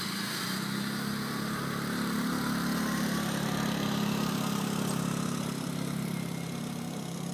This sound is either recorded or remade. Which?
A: remade